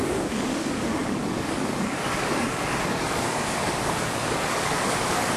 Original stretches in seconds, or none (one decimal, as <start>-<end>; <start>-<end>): none